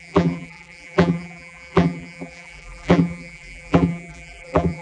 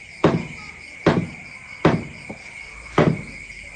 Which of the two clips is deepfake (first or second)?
first